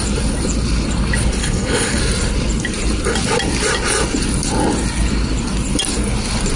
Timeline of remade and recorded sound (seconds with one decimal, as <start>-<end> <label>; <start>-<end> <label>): 0.0-1.4 recorded; 1.4-2.0 remade; 2.0-6.6 recorded